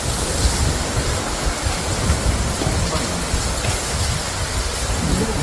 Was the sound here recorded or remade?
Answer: remade